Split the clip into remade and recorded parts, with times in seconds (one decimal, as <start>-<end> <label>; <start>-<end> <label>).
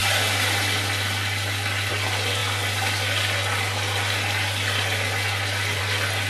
0.0-6.3 recorded